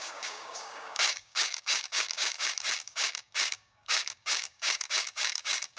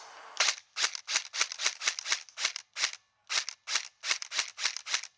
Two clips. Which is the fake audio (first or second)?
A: first